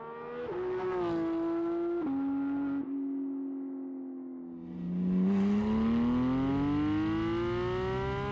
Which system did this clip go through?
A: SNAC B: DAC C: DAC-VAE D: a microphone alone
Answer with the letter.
D